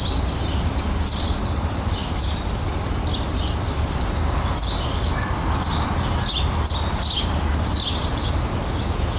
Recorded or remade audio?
recorded